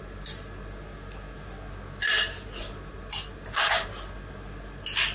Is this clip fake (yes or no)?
no